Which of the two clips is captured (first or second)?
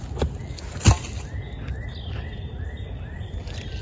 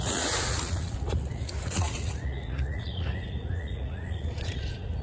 first